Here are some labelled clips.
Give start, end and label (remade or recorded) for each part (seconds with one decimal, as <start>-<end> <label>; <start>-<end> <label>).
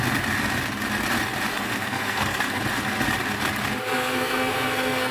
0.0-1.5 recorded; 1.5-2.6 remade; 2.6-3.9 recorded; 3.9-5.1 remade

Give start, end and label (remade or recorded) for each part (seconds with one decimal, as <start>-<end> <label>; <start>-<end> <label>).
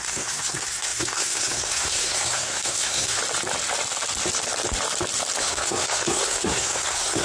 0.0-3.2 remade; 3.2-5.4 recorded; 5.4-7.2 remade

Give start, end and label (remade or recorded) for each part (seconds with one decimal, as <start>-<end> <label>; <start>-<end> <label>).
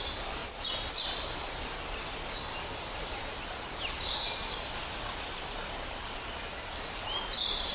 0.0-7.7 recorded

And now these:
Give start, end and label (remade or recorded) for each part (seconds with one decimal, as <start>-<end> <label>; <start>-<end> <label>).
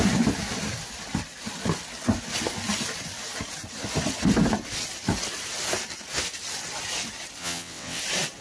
0.0-7.4 recorded; 7.4-8.0 remade; 8.0-8.4 recorded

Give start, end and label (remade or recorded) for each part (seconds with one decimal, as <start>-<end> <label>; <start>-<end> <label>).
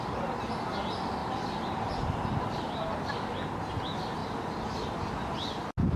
0.0-1.2 recorded; 1.2-3.4 remade; 3.4-6.0 recorded